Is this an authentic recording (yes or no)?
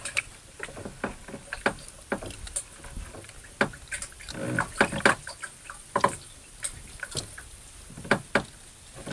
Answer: yes